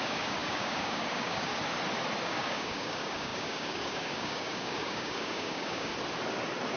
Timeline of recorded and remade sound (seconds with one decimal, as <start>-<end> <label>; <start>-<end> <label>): 0.0-1.5 remade; 1.5-2.2 recorded; 2.2-5.9 remade; 5.9-6.8 recorded